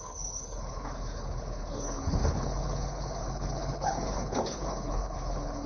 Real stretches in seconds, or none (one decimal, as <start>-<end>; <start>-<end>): none